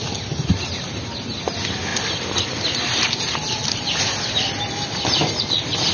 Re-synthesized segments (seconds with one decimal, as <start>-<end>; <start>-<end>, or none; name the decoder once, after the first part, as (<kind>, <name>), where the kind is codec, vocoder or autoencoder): none